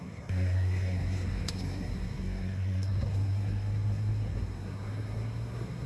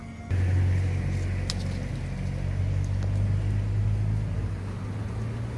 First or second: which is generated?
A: first